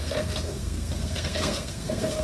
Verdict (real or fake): fake